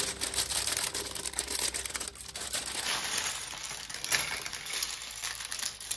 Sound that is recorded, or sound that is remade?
recorded